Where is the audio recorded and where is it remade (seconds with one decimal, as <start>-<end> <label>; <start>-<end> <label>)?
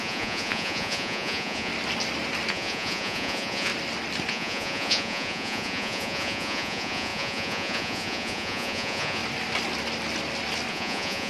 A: 0.0-1.7 remade; 1.7-2.5 recorded; 2.5-3.7 remade; 3.7-4.3 recorded; 4.3-9.2 remade; 9.2-10.7 recorded; 10.7-11.3 remade